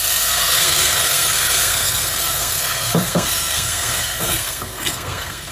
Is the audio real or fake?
fake